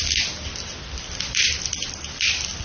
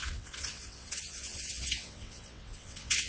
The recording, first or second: first